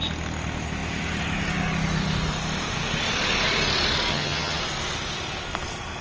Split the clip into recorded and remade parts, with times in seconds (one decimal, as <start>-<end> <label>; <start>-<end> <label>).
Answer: 0.0-4.1 recorded; 4.1-4.6 remade; 4.6-6.0 recorded